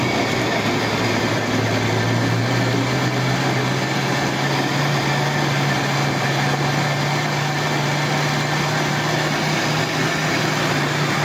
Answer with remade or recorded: recorded